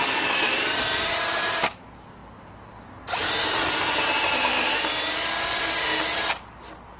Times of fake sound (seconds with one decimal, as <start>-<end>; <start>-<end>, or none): none